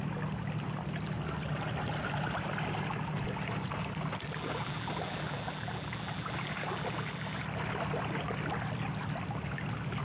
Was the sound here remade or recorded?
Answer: recorded